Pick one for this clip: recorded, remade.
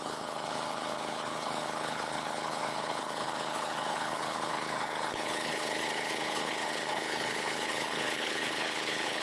remade